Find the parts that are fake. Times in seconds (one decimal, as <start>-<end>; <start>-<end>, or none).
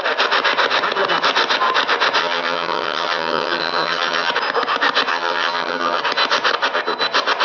2.2-4.3; 5.1-6.0